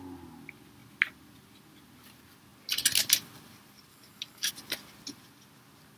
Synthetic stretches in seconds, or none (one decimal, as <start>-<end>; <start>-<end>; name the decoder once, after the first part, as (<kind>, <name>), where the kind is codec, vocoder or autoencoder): 3.9-4.5 (codec, DAC)